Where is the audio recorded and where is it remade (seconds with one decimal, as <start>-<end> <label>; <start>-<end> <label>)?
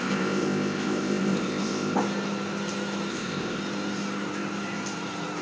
0.0-2.0 remade; 2.0-3.1 recorded; 3.1-3.6 remade; 3.6-5.4 recorded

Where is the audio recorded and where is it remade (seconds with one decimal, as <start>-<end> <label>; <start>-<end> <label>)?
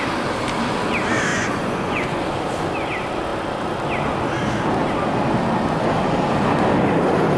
0.0-1.3 recorded; 1.3-2.2 remade; 2.2-7.4 recorded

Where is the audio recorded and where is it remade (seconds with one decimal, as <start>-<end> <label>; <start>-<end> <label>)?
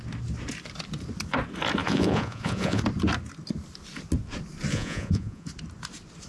0.0-1.8 recorded; 1.8-2.8 remade; 2.8-4.7 recorded; 4.7-5.5 remade; 5.5-6.3 recorded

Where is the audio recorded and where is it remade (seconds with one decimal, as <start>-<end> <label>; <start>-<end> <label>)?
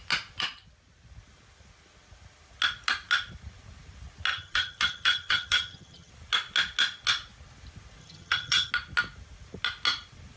0.0-4.3 recorded; 4.3-6.1 remade; 6.1-8.0 recorded; 8.0-8.7 remade; 8.7-10.4 recorded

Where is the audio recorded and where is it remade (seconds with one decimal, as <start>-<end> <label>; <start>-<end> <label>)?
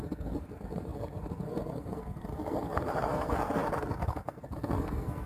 0.0-5.3 remade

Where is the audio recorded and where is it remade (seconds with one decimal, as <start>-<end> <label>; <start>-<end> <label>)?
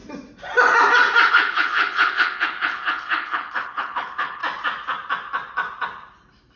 0.0-1.3 recorded; 1.3-4.4 remade; 4.4-6.6 recorded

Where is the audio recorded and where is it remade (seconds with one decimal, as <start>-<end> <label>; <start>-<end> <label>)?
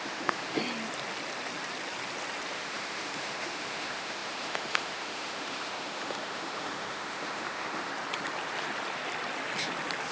0.0-0.6 remade; 0.6-2.5 recorded; 2.5-7.9 remade; 7.9-10.1 recorded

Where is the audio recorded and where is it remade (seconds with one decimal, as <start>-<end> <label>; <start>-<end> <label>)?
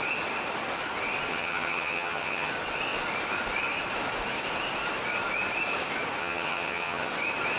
0.0-1.3 recorded; 1.3-2.5 remade; 2.5-6.2 recorded; 6.2-7.1 remade; 7.1-7.6 recorded